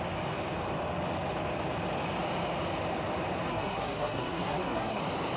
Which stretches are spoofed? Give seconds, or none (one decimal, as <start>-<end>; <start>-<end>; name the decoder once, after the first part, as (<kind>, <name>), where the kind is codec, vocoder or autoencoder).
3.5-5.0 (codec, SNAC)